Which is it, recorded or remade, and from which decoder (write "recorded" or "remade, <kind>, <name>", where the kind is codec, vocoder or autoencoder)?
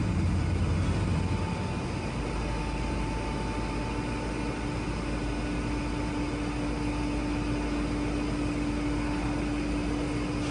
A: recorded